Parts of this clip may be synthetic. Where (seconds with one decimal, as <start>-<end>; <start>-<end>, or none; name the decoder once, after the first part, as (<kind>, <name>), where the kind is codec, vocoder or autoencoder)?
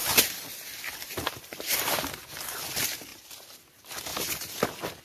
0.0-2.6 (vocoder, BigVGAN v2); 4.1-4.6